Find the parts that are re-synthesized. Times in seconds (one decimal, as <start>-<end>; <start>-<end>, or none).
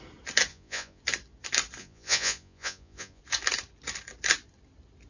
0.5-1.0; 1.8-3.2